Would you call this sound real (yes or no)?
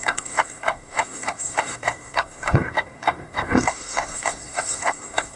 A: no